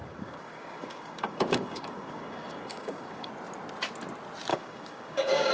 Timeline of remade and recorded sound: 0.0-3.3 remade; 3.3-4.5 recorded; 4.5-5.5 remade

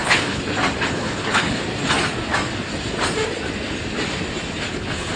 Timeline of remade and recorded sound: 0.0-0.4 remade; 0.4-0.9 recorded; 0.9-1.6 remade; 1.6-4.7 recorded; 4.7-5.2 remade

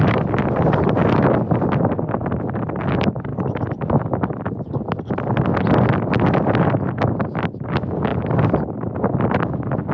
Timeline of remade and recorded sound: 0.0-3.3 recorded; 3.3-4.0 remade; 4.0-8.1 recorded; 8.1-9.9 remade

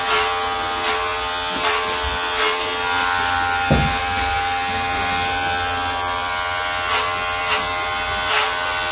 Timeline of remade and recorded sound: 0.0-8.9 recorded

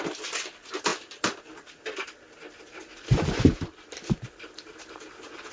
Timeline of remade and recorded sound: 0.0-0.9 recorded; 0.9-4.2 remade; 4.2-5.5 recorded

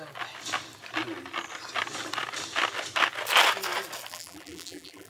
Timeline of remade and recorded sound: 0.0-4.1 recorded; 4.1-5.1 remade

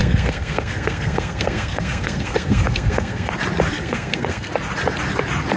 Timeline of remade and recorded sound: 0.0-3.3 remade; 3.3-3.7 recorded; 3.7-4.5 remade; 4.5-5.6 recorded

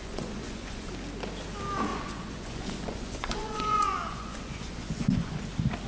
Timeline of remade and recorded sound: 0.0-0.9 remade; 0.9-1.9 recorded; 1.9-5.4 remade; 5.4-5.9 recorded